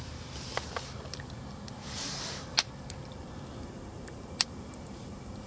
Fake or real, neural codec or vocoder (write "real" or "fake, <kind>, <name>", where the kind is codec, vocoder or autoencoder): real